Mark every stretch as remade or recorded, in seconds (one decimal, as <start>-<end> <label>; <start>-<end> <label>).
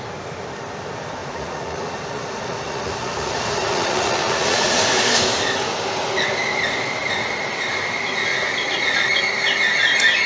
0.0-1.2 recorded; 1.2-4.8 remade; 4.8-8.3 recorded; 8.3-9.2 remade; 9.2-10.3 recorded